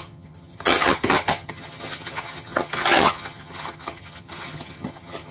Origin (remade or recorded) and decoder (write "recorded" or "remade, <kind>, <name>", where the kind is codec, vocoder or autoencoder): remade, vocoder, HiFi-GAN